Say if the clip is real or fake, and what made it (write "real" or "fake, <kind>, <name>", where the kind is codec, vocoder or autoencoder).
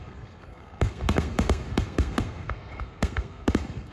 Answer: fake, codec, SNAC